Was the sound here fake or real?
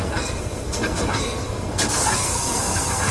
fake